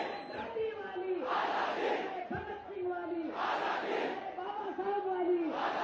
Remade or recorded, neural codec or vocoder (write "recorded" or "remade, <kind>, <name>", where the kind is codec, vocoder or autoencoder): recorded